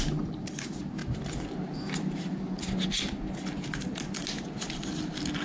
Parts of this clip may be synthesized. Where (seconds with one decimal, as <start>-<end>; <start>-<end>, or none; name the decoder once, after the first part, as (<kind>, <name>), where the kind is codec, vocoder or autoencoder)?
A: none